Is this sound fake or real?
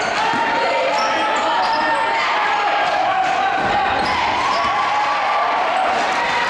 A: real